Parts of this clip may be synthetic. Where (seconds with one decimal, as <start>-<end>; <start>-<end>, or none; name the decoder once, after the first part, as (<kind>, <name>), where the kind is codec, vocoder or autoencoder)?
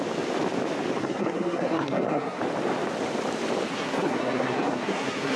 1.0-2.4 (codec, SNAC); 3.7-5.4